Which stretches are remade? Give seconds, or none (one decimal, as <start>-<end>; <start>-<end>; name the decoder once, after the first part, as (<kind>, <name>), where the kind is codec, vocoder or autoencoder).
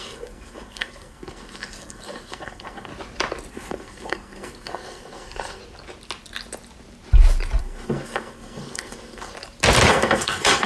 0.0-2.9 (codec, SNAC); 3.5-5.6; 7.6-9.3; 9.9-10.7